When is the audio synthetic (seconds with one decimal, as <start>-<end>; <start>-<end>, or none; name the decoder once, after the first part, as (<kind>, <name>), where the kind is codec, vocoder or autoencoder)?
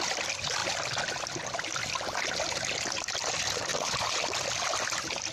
none